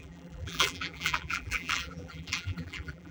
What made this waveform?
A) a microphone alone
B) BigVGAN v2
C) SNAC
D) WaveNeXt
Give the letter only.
B